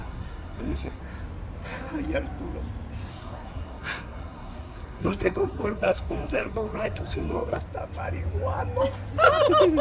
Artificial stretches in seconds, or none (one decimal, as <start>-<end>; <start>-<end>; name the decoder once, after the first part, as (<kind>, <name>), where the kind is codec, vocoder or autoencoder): 0.0-1.0 (codec, SNAC); 3.1-7.6